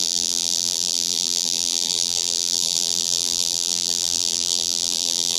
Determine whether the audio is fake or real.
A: fake